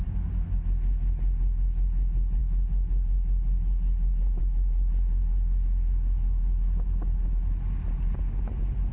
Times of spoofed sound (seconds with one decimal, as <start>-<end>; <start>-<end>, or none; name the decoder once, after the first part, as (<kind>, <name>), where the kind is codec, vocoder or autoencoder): none